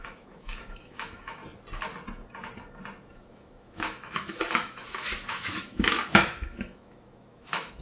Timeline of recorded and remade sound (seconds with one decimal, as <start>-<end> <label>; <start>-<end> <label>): 0.0-1.4 remade; 1.4-3.1 recorded; 3.1-7.8 remade